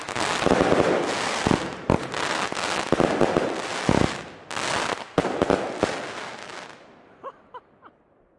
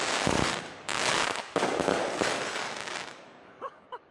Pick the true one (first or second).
first